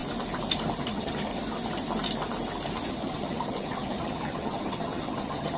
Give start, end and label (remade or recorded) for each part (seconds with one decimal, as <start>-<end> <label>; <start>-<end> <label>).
0.0-0.9 recorded; 0.9-1.3 remade; 1.3-2.9 recorded; 2.9-5.6 remade